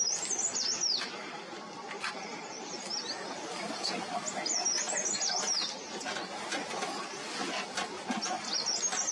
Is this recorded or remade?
recorded